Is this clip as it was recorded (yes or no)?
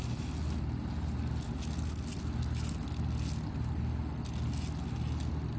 yes